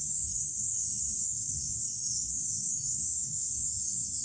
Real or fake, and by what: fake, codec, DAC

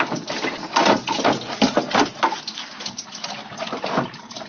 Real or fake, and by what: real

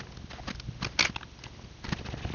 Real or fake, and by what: real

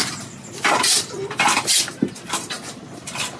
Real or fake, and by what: real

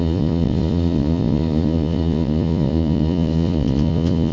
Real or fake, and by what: fake, vocoder, Vocos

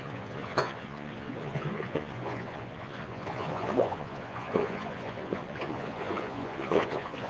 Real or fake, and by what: fake, vocoder, Vocos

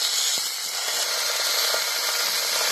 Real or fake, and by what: real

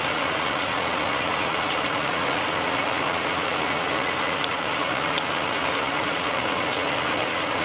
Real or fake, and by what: fake, vocoder, Vocos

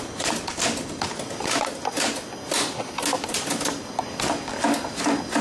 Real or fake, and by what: real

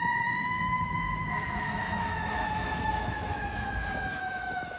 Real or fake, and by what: fake, autoencoder, DAC-VAE